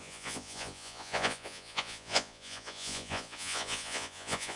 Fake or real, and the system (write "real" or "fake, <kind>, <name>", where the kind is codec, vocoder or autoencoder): fake, vocoder, Vocos